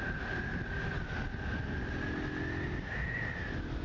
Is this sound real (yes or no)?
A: yes